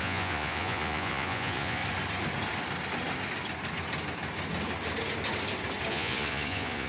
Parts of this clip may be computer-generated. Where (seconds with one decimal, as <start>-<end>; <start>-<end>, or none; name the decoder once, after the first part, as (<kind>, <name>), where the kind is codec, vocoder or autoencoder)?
0.0-1.8 (vocoder, Vocos); 5.9-6.9